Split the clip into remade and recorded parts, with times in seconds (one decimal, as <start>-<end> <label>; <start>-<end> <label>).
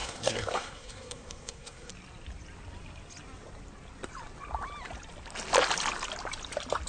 0.0-1.9 remade; 1.9-6.9 recorded